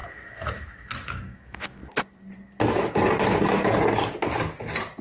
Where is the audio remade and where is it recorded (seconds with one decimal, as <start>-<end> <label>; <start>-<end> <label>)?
0.0-1.8 remade; 1.8-5.0 recorded